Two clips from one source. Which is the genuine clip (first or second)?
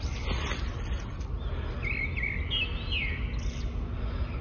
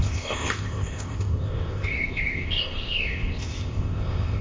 first